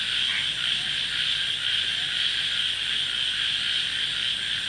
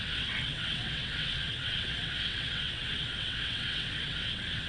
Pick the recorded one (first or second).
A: first